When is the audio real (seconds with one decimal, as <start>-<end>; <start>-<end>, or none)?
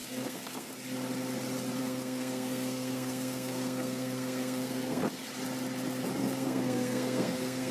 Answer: 0.7-1.8; 5.0-6.2